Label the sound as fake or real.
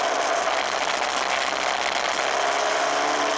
real